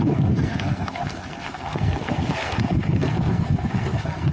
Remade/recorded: remade